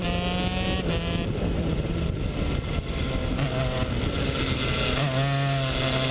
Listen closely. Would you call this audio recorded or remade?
recorded